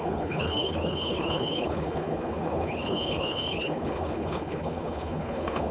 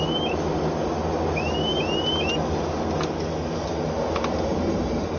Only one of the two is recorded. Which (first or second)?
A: second